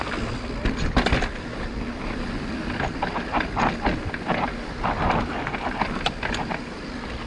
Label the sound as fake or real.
real